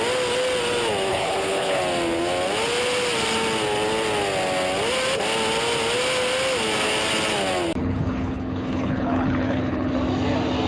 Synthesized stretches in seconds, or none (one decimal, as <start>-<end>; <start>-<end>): 1.1-1.8; 7.8-9.9